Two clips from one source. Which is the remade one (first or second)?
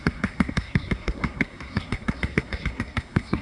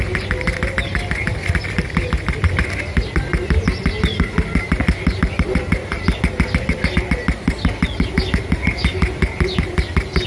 first